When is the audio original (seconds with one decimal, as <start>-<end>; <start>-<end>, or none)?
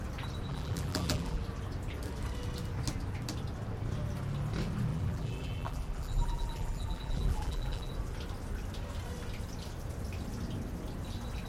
0.0-0.5; 1.4-4.9; 7.9-11.5